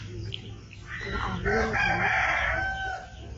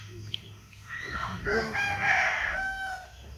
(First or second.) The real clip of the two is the first